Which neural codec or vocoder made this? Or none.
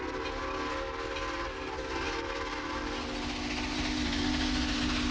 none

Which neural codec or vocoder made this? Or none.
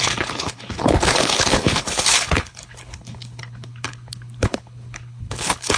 codec, HILCodec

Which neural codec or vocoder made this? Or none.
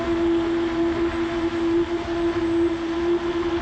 none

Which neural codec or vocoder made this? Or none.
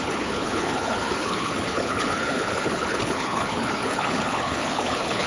codec, HILCodec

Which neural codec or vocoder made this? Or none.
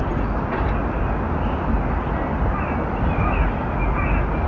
none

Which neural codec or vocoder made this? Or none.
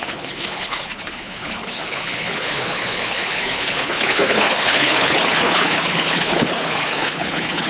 codec, HILCodec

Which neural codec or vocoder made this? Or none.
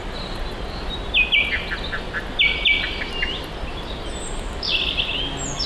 none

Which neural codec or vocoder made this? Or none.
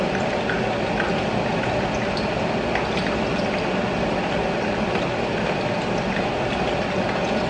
none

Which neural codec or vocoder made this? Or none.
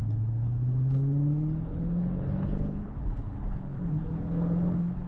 codec, HILCodec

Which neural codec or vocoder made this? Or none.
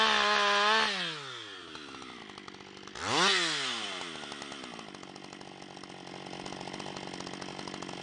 none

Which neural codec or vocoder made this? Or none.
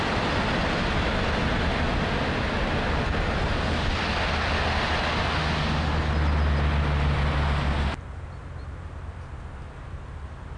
none